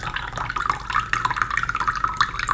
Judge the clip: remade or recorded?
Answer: recorded